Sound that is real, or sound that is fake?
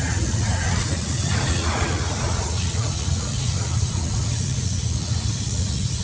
fake